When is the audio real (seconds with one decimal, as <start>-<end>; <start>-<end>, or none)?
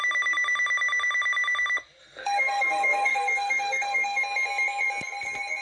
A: 0.0-2.0; 4.2-5.6